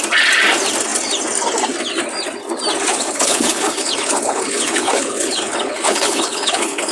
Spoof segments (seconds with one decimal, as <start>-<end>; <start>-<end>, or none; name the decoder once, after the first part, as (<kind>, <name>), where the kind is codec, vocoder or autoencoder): 2.9-6.9 (codec, HILCodec)